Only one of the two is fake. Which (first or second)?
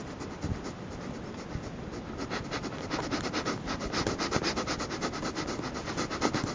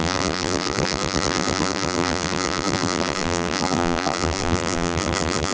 second